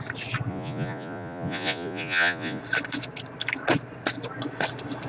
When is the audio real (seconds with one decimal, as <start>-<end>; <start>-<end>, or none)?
0.0-0.5; 2.6-5.1